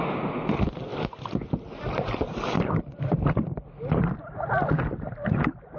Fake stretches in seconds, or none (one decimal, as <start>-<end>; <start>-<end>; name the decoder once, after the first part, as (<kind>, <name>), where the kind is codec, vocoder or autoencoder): none